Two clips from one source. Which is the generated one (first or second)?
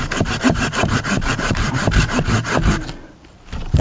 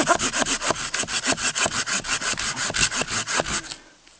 first